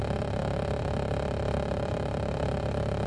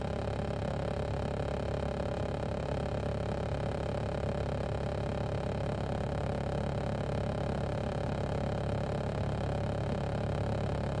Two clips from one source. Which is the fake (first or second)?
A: first